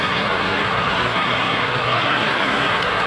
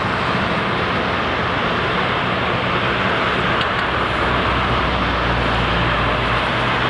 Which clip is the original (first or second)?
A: second